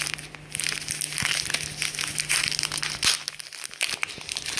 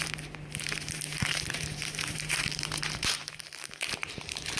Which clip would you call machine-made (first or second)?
second